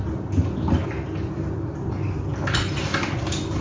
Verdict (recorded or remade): recorded